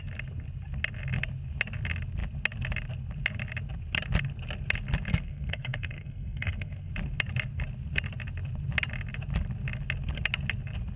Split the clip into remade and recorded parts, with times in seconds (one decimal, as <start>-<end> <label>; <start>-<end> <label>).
0.0-5.1 recorded; 5.1-6.9 remade; 6.9-11.0 recorded